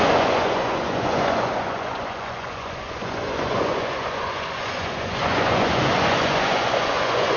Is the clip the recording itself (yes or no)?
no